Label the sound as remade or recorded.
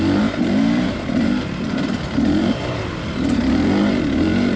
remade